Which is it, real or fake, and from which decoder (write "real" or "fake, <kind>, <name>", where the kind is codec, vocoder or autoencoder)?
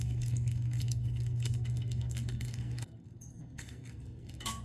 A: fake, codec, SNAC